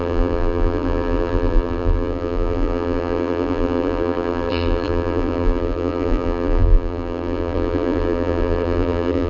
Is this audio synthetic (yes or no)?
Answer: yes